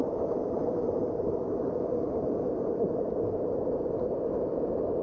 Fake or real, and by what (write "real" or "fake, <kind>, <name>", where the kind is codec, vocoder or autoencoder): fake, vocoder, BigVGAN v2